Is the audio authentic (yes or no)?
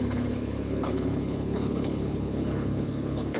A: no